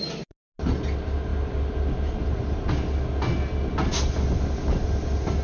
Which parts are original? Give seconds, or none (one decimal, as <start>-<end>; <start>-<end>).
0.0-5.4